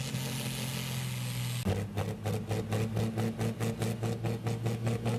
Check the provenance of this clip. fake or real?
real